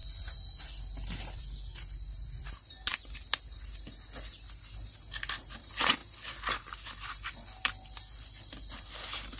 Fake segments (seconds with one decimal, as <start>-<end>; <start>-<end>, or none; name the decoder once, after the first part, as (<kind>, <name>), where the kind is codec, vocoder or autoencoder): 0.0-2.9 (vocoder, BigVGAN v2); 3.4-6.0; 6.6-9.4